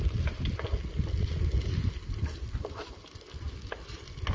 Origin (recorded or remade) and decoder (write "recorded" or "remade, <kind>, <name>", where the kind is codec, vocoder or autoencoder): recorded